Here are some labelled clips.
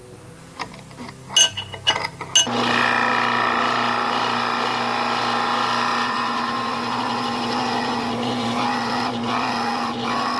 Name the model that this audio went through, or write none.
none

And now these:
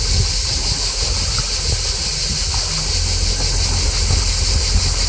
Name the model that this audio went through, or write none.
none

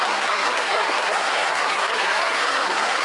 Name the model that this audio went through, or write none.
codec, SNAC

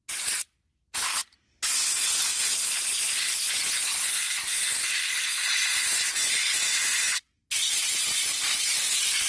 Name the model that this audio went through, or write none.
none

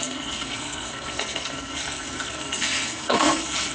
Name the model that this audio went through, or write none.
codec, SNAC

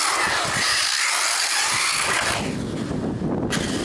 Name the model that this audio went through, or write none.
none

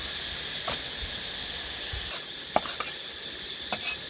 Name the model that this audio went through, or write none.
none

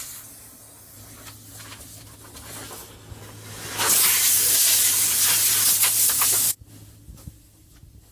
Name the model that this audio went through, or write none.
none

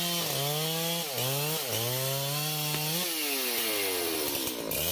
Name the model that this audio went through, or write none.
none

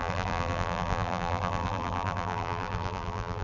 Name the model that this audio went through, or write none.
vocoder, BigVGAN v2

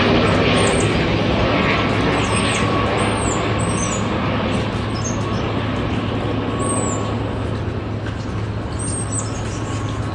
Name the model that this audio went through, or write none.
none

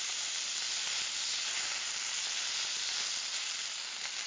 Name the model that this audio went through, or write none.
none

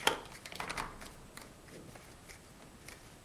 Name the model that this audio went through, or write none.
none